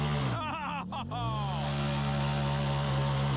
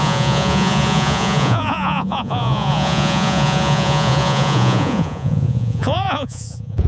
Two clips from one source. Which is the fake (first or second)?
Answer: second